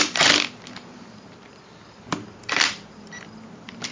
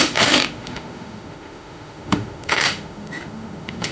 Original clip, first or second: first